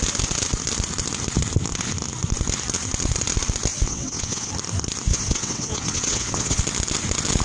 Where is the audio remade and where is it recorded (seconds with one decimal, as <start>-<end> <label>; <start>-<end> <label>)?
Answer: 0.0-3.7 recorded; 3.7-4.5 remade; 4.5-5.1 recorded; 5.1-6.6 remade; 6.6-7.4 recorded